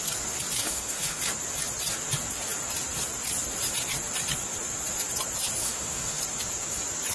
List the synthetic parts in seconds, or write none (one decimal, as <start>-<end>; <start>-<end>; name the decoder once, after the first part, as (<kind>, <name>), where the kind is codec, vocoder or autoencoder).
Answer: 0.6-1.2 (autoencoder, DAC-VAE); 5.6-6.2